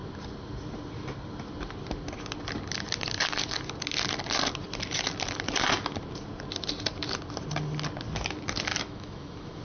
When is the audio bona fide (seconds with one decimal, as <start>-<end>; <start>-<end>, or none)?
0.0-8.7